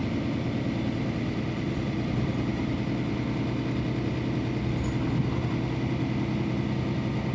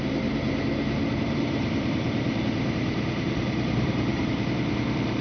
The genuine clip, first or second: first